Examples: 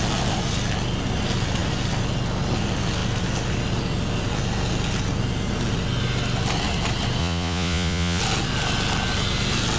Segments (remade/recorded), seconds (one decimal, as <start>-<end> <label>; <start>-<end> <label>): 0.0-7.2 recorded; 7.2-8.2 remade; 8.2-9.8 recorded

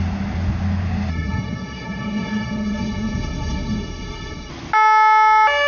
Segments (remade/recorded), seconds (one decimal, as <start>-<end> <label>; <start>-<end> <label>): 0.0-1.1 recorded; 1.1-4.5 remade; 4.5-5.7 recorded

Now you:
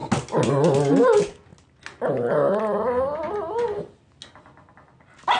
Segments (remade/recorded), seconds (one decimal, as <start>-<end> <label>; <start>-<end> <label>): 0.0-5.4 recorded